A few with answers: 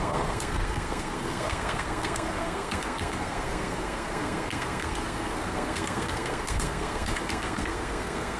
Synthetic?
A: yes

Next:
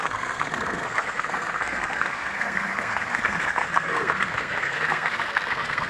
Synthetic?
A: yes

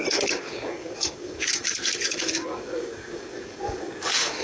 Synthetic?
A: yes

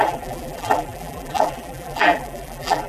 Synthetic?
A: yes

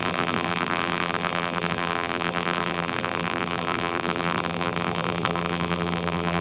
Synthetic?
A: yes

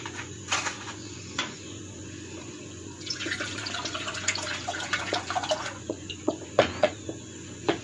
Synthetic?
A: yes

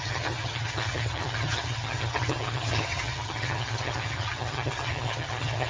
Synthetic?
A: yes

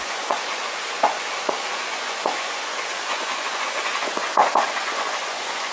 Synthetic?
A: yes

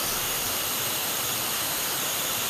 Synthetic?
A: yes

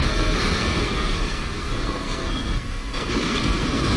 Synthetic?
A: yes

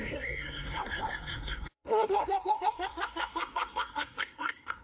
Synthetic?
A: yes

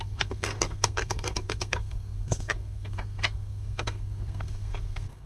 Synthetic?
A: yes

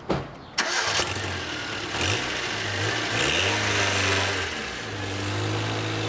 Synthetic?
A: no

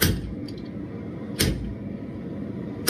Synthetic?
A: no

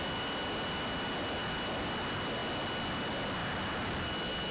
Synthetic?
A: no